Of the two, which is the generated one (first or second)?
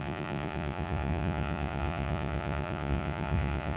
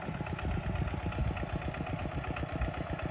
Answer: first